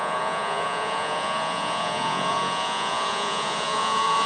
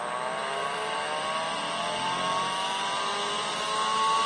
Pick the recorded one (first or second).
second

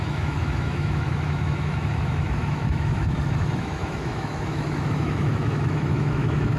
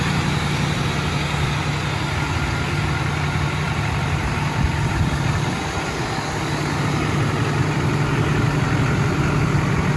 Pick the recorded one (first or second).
second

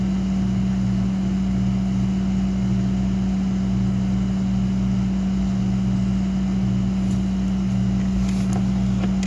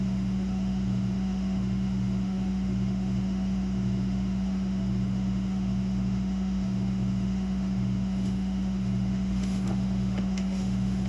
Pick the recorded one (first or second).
first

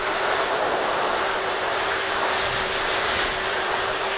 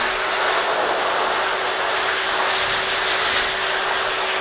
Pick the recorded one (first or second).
second